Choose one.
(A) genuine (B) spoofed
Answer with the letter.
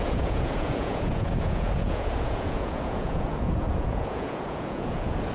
B